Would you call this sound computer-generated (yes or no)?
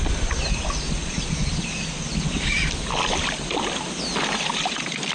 no